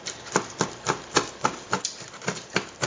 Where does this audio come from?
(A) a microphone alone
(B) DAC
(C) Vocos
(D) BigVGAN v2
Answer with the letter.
A